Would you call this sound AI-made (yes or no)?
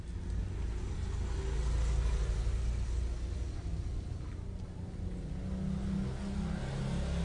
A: no